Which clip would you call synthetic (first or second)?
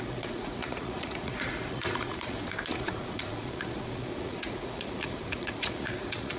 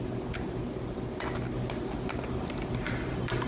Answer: first